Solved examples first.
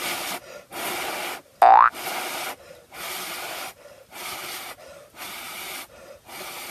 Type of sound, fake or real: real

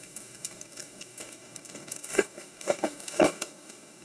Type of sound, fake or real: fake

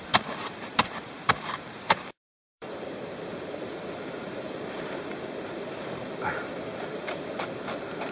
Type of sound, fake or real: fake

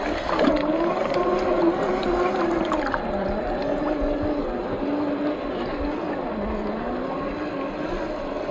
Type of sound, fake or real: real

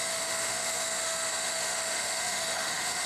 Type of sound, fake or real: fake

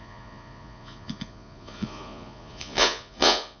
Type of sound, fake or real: fake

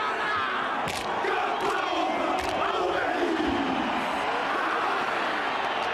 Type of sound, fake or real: real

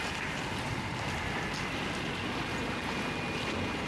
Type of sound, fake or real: real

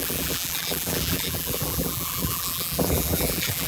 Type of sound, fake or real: fake